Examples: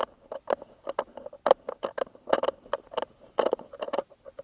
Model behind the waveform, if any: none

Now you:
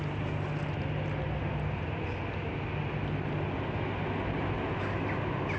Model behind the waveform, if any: none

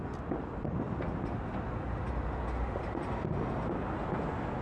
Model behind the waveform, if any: none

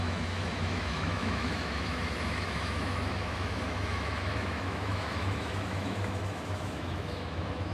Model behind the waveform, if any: autoencoder, DAC-VAE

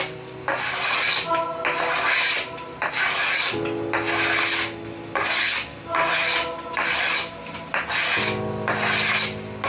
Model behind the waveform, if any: none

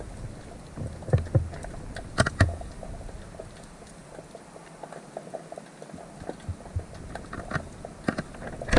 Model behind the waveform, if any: none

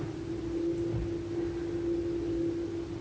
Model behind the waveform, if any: none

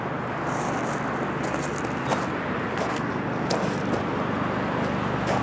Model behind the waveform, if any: none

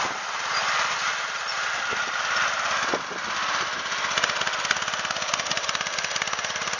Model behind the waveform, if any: none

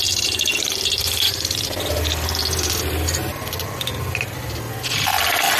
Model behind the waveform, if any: none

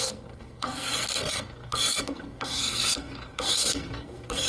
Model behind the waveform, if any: codec, SNAC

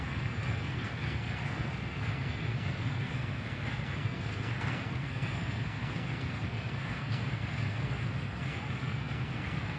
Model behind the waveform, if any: codec, SNAC